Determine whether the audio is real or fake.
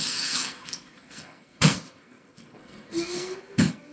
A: fake